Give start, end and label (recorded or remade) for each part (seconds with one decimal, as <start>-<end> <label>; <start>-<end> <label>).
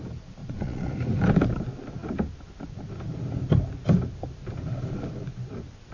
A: 0.0-0.4 recorded; 0.4-0.9 remade; 0.9-5.9 recorded